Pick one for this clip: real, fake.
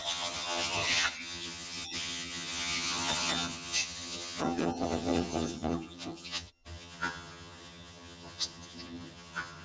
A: fake